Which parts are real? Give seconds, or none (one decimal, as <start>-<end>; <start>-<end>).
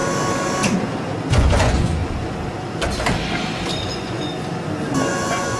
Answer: 0.0-1.3; 2.0-3.8; 4.3-5.1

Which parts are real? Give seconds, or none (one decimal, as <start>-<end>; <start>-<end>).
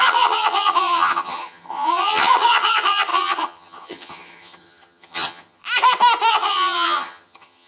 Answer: 5.6-6.3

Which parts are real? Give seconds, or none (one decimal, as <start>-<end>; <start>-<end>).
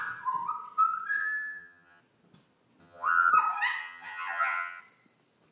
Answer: 0.0-1.2; 2.0-2.8; 3.3-3.8; 4.8-5.5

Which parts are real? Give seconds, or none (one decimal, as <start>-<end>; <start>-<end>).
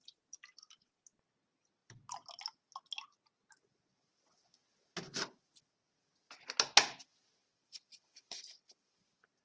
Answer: 0.0-7.4; 9.0-9.4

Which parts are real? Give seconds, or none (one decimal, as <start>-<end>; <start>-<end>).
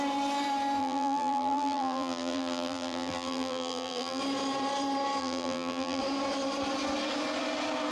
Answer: 0.0-0.8; 4.2-5.2; 6.0-7.9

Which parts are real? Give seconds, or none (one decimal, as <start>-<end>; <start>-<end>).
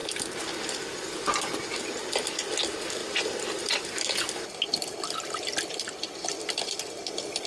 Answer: 0.0-7.5